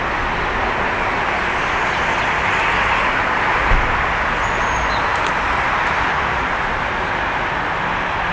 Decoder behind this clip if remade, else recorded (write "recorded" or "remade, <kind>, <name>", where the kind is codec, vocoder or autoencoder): recorded